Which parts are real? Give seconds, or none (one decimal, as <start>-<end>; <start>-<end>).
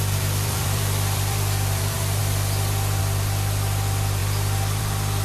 2.2-3.0; 4.2-4.8